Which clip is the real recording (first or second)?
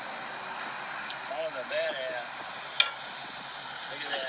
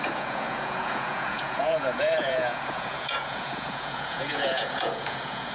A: first